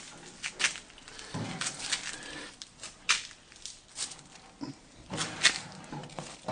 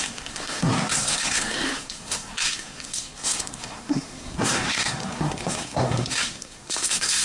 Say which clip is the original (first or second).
first